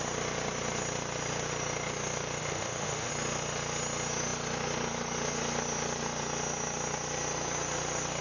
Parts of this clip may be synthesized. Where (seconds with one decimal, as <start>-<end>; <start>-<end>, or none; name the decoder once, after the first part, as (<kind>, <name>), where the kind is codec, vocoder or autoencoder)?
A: 2.4-3.1 (autoencoder, DAC-VAE)